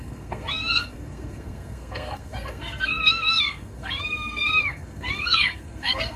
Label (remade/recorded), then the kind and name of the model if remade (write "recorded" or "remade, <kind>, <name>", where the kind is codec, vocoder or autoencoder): remade, codec, SNAC